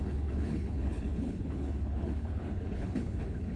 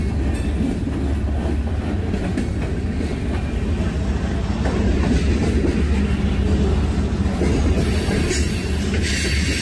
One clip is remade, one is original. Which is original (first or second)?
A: second